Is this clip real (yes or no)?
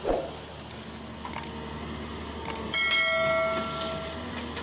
yes